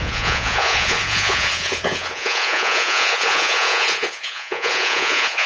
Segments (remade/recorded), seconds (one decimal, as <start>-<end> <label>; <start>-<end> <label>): 0.0-5.5 remade